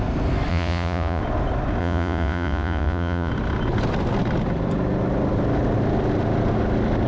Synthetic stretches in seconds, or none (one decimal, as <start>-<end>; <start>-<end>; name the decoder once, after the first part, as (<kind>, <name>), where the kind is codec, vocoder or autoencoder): 0.5-1.2 (vocoder, Vocos); 1.8-3.3